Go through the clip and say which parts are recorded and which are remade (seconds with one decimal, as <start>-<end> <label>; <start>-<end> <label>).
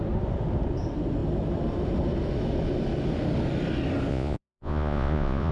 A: 0.0-4.1 recorded; 4.1-5.5 remade